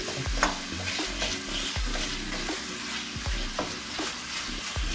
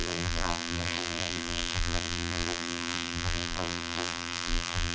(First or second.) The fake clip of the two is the second